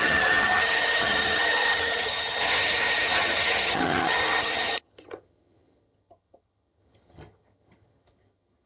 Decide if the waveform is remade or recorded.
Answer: remade